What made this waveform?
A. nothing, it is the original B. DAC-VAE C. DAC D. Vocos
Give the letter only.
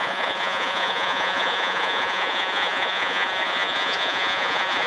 D